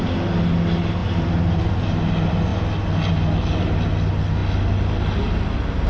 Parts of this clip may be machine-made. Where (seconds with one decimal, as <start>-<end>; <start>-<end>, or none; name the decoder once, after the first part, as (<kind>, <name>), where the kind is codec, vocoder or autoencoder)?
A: 1.0-1.6 (vocoder, BigVGAN v2)

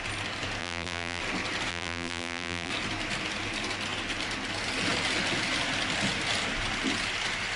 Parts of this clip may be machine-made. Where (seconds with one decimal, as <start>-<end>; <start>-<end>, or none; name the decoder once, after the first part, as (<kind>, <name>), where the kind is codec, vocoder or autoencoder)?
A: 0.6-1.2 (vocoder, BigVGAN v2); 1.7-2.7

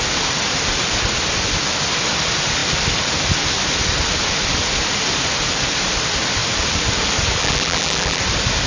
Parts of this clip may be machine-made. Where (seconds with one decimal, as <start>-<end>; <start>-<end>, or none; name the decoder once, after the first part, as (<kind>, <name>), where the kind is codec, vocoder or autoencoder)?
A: 7.4-8.2 (vocoder, BigVGAN v2)

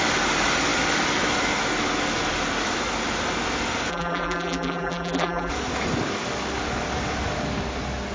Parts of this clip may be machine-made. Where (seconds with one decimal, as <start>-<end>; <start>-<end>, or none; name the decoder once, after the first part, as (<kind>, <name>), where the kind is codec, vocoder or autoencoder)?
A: 3.9-5.5 (vocoder, BigVGAN v2)

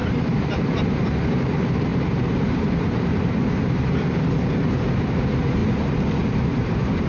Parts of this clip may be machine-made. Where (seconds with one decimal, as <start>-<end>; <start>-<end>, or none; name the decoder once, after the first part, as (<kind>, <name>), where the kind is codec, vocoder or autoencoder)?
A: 0.0-5.6 (vocoder, BigVGAN v2); 6.4-7.1

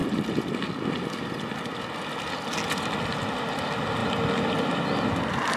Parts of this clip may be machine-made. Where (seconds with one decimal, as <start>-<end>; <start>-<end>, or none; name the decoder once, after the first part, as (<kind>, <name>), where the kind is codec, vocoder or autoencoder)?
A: none

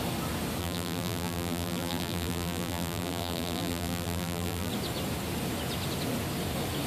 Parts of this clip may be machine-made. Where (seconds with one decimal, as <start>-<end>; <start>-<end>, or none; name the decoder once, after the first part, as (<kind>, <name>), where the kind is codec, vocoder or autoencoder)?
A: 0.6-4.7 (vocoder, BigVGAN v2)

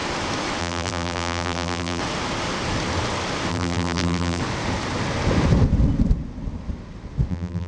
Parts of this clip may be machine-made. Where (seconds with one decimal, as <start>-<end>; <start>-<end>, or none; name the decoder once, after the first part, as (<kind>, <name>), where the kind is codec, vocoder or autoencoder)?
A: 0.6-2.0 (vocoder, BigVGAN v2); 3.5-4.4; 7.3-7.7